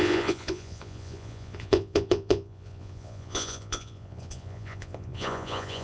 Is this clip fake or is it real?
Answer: fake